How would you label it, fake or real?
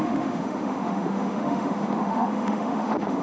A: fake